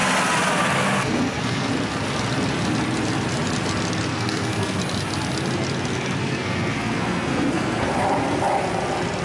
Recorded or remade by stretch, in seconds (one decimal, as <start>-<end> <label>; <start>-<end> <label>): 0.0-1.0 recorded; 1.0-1.7 remade; 1.7-4.1 recorded; 4.1-4.8 remade; 4.8-6.2 recorded; 6.2-7.9 remade; 7.9-9.2 recorded